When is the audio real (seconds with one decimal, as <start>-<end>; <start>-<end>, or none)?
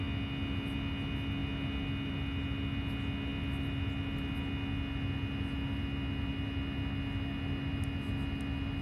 0.0-8.8